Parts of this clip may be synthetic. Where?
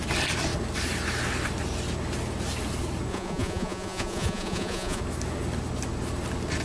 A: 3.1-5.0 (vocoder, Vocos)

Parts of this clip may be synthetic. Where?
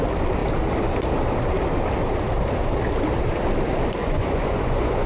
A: 4.0-5.1 (vocoder, Vocos)